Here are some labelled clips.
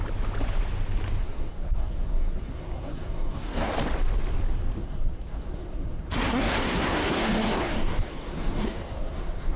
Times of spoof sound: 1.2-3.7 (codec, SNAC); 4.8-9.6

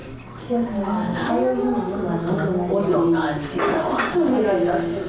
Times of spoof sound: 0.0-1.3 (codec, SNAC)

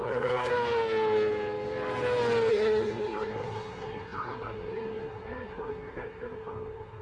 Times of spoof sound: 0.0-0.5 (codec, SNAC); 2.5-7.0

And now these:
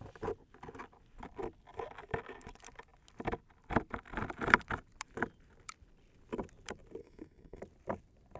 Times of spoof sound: 7.0-7.6 (codec, SNAC)

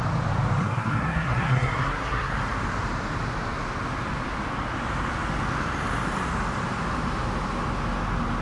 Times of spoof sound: 0.6-2.3 (codec, SNAC)

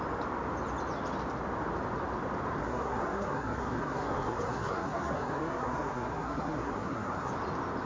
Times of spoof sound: 2.6-7.3 (codec, SNAC)

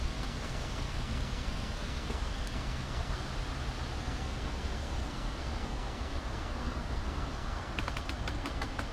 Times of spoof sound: 0.0-3.3 (codec, SNAC); 4.0-8.9

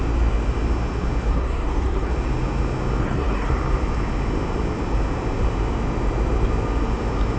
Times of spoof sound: 1.3-2.1 (codec, SNAC); 3.0-3.5